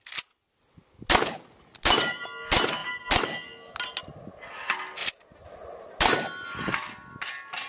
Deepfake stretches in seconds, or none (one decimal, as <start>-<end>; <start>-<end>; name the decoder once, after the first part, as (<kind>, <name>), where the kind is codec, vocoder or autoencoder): none